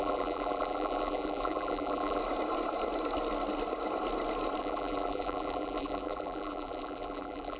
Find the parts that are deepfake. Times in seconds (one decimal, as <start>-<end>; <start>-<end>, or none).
0.0-2.2; 4.6-7.6